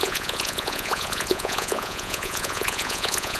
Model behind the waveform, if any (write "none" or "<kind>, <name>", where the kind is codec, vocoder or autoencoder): vocoder, Vocos